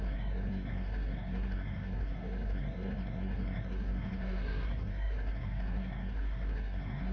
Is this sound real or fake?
fake